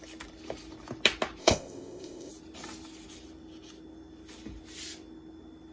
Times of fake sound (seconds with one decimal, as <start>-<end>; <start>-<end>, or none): 1.4-2.3